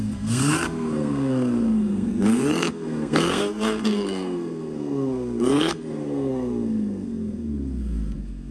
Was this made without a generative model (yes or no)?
no